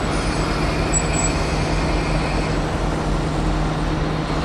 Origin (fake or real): real